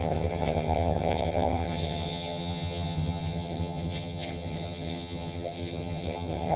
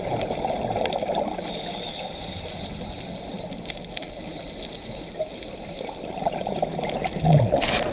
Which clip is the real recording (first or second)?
second